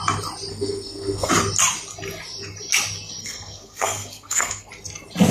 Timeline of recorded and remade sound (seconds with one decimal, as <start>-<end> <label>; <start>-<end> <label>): 0.0-0.5 recorded; 0.5-1.3 remade; 1.3-3.2 recorded; 3.2-4.7 remade; 4.7-5.3 recorded